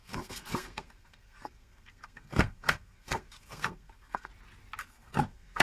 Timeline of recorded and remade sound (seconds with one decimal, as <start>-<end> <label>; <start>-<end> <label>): 0.0-4.3 remade; 4.3-4.8 recorded; 4.8-5.6 remade

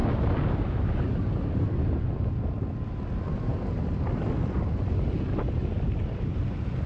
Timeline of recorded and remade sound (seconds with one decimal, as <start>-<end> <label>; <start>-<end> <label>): 0.0-6.9 recorded

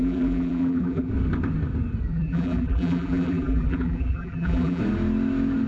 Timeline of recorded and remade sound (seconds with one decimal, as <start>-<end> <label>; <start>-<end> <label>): 0.0-1.1 remade; 1.1-2.1 recorded; 2.1-4.8 remade; 4.8-5.7 recorded

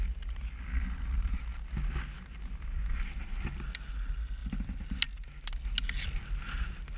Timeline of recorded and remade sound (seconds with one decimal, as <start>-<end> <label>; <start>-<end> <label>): 0.0-7.0 recorded

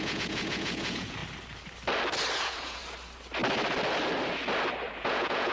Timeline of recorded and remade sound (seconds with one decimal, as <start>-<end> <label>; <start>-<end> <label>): 0.0-1.2 remade; 1.2-2.4 recorded; 2.4-2.8 remade; 2.8-4.9 recorded; 4.9-5.5 remade

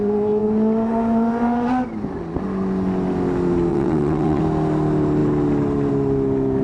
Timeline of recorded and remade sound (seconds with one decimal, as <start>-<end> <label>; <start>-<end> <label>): 0.0-3.7 recorded; 3.7-4.4 remade; 4.4-6.6 recorded